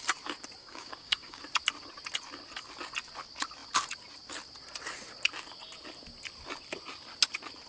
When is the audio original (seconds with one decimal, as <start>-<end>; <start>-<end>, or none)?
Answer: 0.0-0.6; 1.4-7.7